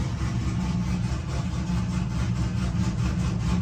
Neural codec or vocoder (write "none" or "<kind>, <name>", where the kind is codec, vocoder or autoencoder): none